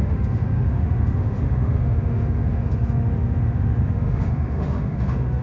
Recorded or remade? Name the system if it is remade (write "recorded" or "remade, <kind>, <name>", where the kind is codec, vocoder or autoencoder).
remade, autoencoder, DAC-VAE